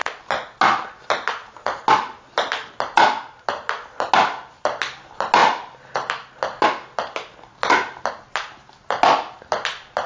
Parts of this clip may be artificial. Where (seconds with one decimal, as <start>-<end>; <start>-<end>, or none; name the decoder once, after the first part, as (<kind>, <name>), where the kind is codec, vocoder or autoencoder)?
none